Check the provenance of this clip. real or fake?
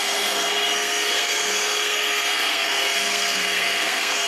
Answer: fake